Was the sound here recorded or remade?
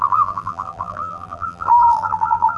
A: remade